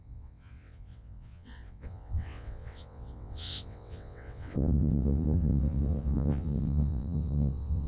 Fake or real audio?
fake